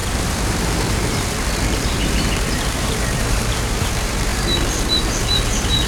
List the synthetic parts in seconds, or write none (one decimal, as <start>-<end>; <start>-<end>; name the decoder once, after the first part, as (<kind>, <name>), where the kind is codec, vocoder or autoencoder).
0.0-5.9 (vocoder, BigVGAN v2)